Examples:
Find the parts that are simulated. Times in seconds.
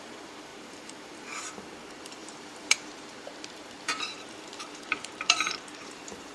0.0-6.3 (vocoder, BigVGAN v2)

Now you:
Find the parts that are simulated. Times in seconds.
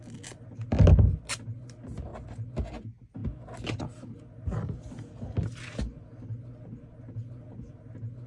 none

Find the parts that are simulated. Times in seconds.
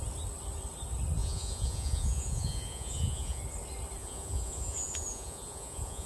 1.2-3.4 (vocoder, Vocos); 4.0-6.1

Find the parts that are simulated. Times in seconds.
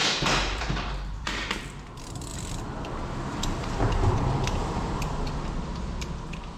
0.0-1.6 (vocoder, BigVGAN v2); 3.3-4.8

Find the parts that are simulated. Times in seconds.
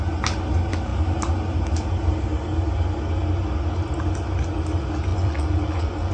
5.1-6.1 (vocoder, Vocos)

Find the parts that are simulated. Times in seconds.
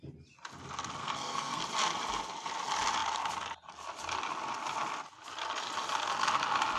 1.0-1.6 (codec, SNAC)